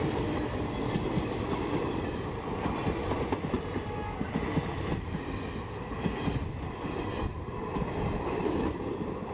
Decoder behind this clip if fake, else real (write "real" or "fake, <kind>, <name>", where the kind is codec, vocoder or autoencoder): real